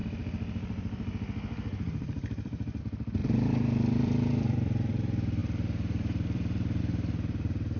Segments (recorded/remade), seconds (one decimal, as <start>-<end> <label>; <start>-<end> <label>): 0.0-2.8 remade; 2.8-3.2 recorded; 3.2-4.9 remade; 4.9-5.4 recorded; 5.4-6.8 remade; 6.8-7.8 recorded